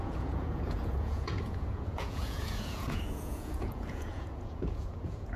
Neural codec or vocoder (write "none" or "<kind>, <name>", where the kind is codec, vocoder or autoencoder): vocoder, Vocos